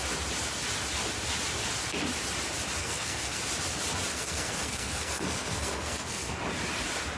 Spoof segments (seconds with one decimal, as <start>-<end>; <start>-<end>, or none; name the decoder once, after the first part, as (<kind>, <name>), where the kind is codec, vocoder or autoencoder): 2.8-3.4 (codec, SNAC); 4.1-6.4